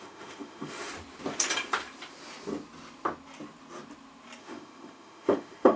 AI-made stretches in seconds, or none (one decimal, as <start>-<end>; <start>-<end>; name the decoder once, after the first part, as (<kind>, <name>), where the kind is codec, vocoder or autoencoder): 0.0-0.9 (autoencoder, DAC-VAE); 4.4-5.8